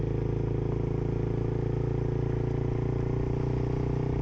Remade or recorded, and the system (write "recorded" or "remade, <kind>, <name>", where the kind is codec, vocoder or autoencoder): recorded